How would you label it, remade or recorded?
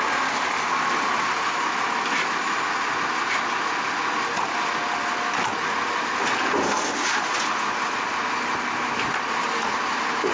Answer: recorded